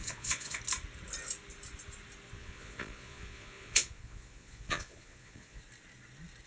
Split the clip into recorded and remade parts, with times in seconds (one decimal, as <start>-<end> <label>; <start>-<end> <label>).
0.0-0.6 remade; 0.6-2.4 recorded; 2.4-5.6 remade; 5.6-6.5 recorded